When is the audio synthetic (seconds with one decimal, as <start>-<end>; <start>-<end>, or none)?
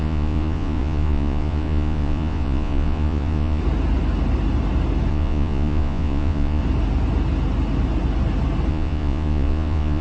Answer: 0.0-3.6; 5.1-6.6; 8.7-10.0